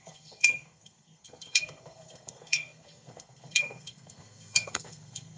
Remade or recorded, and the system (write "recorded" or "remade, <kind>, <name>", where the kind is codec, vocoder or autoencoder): remade, codec, SNAC